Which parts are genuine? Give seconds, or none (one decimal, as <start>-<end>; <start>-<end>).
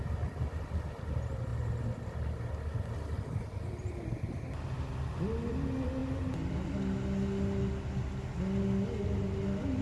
0.0-9.8